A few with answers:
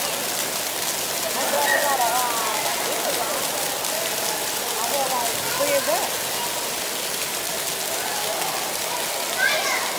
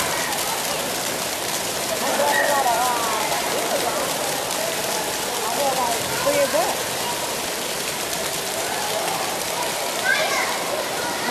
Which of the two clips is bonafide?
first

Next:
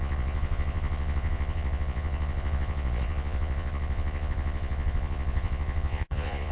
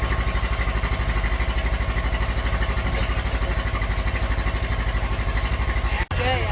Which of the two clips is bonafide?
second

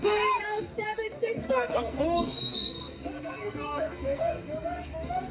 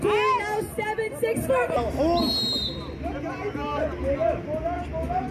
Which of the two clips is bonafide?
second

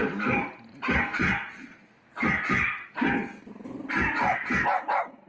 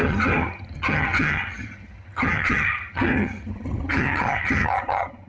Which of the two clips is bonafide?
first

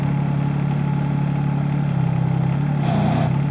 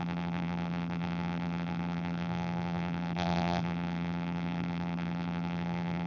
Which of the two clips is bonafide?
first